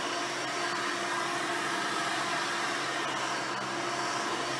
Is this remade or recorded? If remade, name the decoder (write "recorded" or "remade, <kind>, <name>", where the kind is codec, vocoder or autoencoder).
recorded